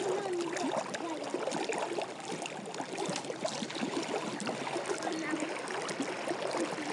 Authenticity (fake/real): real